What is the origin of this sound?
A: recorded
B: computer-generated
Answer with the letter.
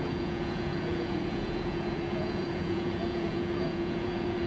B